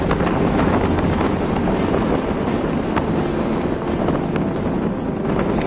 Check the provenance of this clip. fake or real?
real